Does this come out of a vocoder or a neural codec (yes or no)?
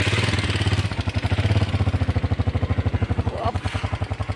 no